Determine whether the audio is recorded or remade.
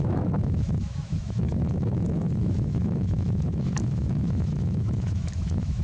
remade